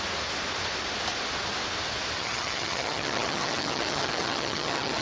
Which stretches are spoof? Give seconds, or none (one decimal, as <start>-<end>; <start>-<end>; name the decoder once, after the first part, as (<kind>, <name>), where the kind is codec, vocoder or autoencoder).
2.2-5.0 (vocoder, HiFi-GAN)